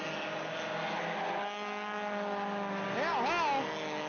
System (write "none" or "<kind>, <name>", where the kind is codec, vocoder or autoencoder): none